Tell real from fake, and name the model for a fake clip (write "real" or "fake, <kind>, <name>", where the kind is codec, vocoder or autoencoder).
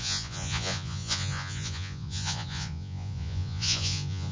fake, vocoder, Vocos